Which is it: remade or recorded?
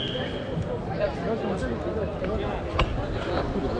recorded